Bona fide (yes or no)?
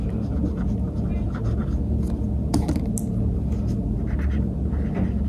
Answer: yes